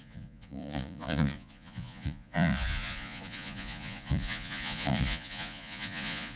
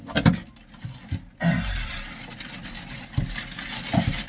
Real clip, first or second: second